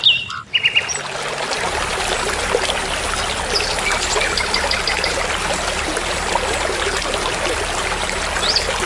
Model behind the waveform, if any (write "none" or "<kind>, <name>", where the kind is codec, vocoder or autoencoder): none